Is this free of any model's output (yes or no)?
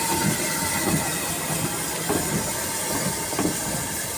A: yes